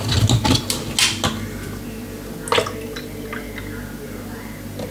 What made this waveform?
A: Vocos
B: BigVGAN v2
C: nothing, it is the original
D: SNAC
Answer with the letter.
C